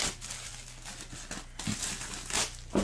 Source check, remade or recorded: recorded